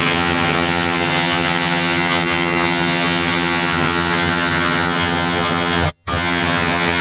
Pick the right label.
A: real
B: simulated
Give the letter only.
B